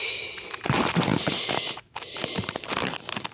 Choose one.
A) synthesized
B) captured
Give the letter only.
A